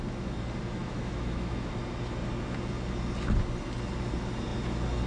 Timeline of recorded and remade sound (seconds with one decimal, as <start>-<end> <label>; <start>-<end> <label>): 0.0-0.8 recorded; 0.8-1.7 remade; 1.7-5.1 recorded